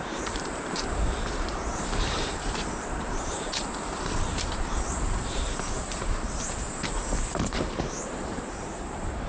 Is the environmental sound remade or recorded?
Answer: remade